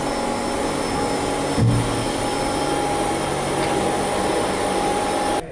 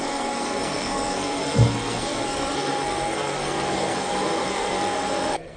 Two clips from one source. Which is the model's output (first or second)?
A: second